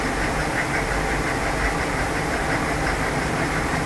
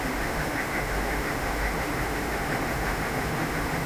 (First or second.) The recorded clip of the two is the first